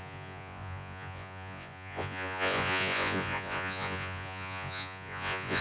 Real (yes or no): no